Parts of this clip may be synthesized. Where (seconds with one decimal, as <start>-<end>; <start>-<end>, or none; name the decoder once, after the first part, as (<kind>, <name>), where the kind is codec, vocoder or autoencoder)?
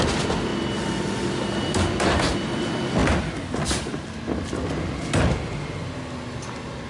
none